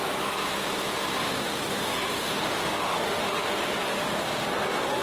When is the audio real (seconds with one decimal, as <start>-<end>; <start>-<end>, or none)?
0.0-1.2; 3.5-5.0